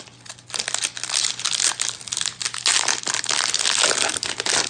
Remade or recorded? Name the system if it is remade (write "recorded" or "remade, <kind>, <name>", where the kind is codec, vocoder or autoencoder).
recorded